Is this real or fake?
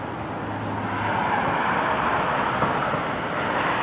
real